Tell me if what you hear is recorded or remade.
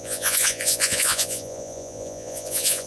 remade